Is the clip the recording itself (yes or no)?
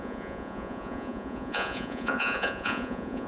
no